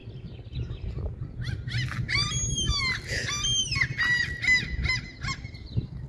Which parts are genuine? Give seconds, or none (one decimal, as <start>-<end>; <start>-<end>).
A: 0.0-6.1